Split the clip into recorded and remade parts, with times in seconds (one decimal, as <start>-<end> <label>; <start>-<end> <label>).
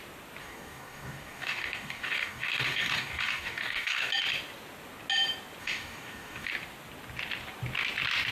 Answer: 0.0-0.4 recorded; 0.4-4.1 remade; 4.1-5.6 recorded; 5.6-6.5 remade; 6.5-8.3 recorded